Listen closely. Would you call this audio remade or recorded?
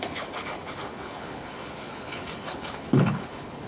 remade